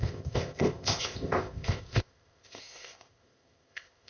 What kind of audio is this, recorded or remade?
remade